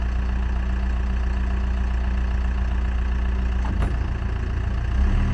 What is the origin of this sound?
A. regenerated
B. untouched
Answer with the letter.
B